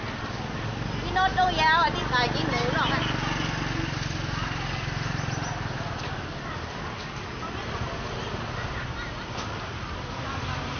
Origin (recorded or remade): recorded